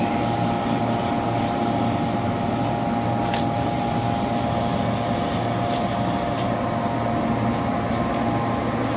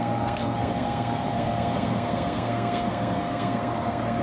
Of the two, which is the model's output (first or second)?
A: second